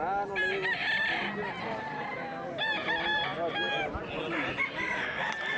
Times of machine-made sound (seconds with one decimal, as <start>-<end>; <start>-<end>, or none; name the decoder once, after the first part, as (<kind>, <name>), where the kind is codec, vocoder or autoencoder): none